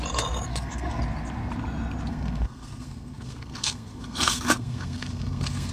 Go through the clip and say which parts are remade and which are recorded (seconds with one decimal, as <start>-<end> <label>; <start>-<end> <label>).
0.0-0.5 recorded; 0.5-1.0 remade; 1.0-2.1 recorded; 2.1-5.7 remade